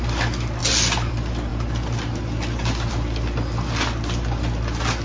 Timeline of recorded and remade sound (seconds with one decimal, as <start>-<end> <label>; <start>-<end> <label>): 0.0-5.0 recorded